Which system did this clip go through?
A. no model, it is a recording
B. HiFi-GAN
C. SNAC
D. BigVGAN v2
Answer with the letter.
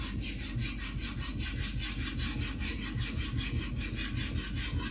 A